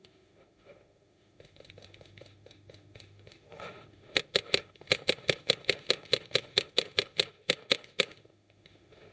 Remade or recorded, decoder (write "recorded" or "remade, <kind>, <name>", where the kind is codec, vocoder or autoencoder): remade, autoencoder, DAC-VAE